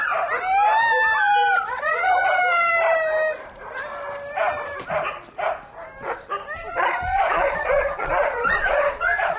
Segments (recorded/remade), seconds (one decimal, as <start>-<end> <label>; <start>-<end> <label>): 0.0-1.7 recorded; 1.7-2.4 remade; 2.4-6.8 recorded; 6.8-9.4 remade